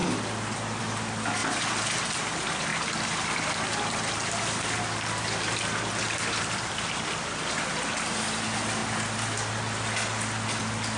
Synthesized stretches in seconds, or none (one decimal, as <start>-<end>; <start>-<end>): none